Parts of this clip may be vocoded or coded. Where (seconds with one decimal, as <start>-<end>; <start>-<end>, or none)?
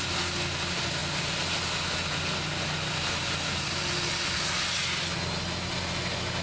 none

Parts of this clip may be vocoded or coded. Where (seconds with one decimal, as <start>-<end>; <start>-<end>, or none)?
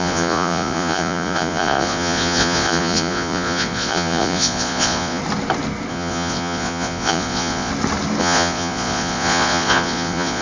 0.0-5.2; 5.9-7.7; 8.2-10.4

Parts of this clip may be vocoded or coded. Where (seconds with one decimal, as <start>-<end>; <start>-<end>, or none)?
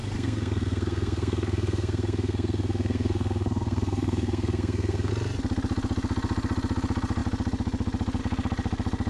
0.0-5.1